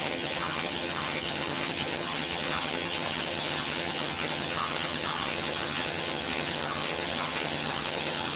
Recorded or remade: remade